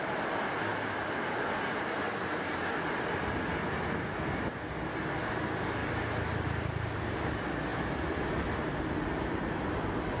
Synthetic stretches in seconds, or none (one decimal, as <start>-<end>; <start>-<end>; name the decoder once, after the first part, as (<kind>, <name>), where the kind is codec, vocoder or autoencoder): none